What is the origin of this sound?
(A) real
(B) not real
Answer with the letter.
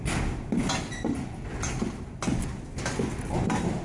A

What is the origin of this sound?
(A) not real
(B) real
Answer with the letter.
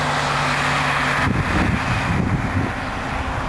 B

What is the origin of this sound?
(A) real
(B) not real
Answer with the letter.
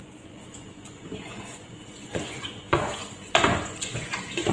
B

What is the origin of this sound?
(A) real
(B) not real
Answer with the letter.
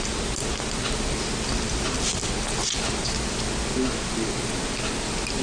A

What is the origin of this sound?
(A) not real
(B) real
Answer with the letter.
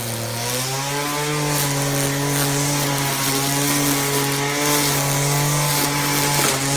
B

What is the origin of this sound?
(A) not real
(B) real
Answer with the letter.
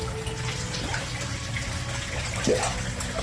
B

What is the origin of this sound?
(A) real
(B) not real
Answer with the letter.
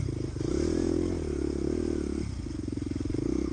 A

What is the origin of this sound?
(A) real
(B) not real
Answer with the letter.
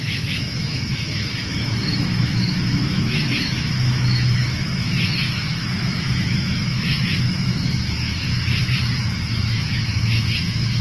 B